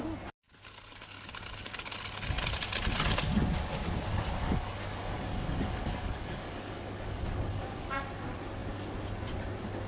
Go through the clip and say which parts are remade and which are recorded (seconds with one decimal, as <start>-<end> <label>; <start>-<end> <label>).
0.0-4.1 recorded; 4.1-7.9 remade; 7.9-9.9 recorded